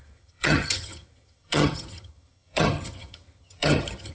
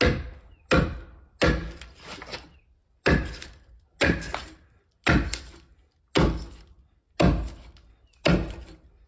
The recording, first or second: second